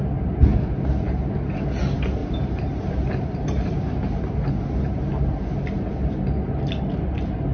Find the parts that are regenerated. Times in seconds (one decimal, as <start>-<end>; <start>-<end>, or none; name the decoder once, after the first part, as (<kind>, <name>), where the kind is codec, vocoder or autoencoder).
0.5-1.0 (vocoder, BigVGAN v2); 2.2-4.2